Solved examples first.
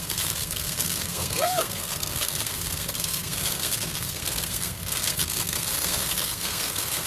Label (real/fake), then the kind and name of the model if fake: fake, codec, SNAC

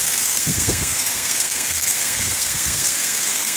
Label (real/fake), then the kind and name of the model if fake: fake, codec, SNAC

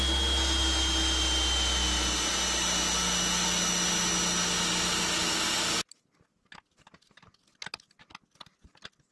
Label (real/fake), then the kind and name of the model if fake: real